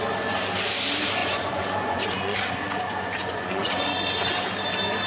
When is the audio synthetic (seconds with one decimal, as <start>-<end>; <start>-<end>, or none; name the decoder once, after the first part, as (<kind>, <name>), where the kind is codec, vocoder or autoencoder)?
1.2-4.3 (vocoder, Vocos)